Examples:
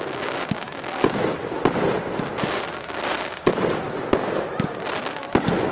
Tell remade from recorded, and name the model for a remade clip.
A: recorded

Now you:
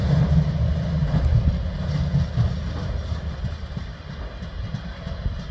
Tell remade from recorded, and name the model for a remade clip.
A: recorded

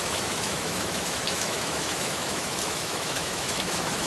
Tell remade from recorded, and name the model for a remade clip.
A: remade, autoencoder, DAC-VAE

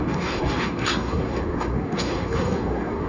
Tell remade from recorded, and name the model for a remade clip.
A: remade, codec, SNAC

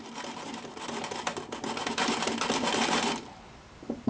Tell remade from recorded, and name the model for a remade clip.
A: recorded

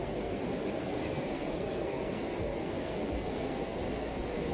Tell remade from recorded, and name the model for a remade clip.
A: remade, codec, SNAC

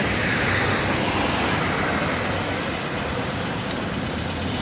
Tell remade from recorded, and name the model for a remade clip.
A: recorded